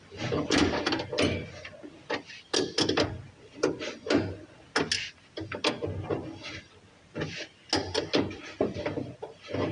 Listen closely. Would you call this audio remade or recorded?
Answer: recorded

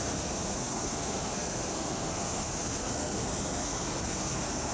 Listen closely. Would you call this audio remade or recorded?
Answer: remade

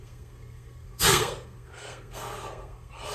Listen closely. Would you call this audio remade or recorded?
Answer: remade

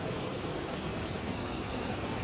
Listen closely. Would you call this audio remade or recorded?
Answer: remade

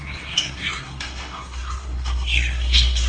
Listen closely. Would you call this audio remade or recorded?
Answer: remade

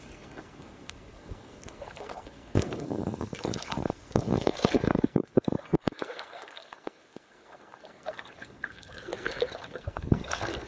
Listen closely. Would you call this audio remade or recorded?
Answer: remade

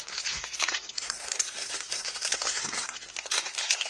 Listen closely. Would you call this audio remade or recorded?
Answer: remade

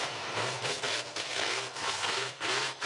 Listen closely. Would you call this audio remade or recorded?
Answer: remade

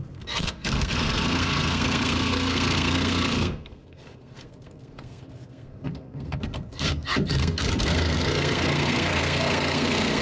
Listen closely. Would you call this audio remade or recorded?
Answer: remade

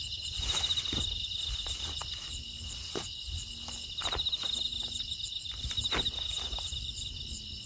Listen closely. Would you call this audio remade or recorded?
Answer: recorded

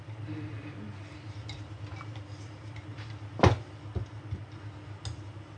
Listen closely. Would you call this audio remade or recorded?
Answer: recorded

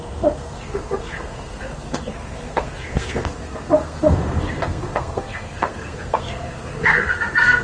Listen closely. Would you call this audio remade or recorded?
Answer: remade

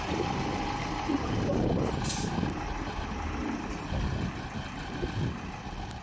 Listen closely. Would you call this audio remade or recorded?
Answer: recorded